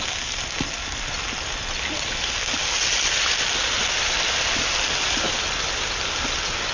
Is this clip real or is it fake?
real